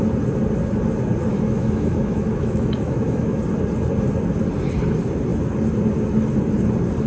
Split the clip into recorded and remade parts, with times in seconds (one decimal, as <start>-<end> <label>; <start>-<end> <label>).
0.0-1.3 recorded; 1.3-3.4 remade; 3.4-7.1 recorded